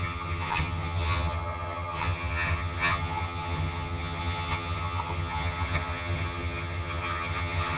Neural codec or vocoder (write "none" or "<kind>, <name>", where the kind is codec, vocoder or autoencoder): vocoder, HiFi-GAN